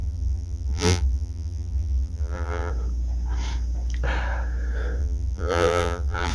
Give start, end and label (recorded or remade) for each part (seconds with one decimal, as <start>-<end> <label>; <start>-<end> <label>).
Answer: 0.0-2.7 remade; 2.7-5.0 recorded; 5.0-6.3 remade